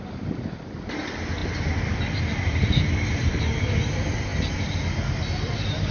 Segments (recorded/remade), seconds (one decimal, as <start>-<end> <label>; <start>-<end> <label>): 0.0-5.9 recorded